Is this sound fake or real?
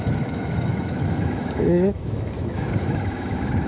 fake